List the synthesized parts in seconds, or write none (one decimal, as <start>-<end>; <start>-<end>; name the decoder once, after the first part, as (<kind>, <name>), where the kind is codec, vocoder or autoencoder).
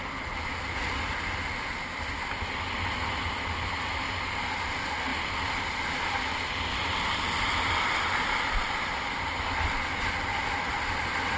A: none